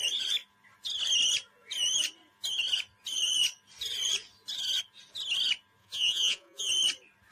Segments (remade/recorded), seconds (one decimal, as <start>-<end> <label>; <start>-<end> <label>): 0.0-5.8 recorded; 5.8-6.7 remade; 6.7-7.3 recorded